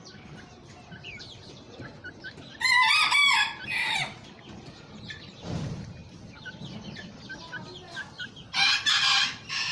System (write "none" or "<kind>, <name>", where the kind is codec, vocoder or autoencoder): vocoder, BigVGAN v2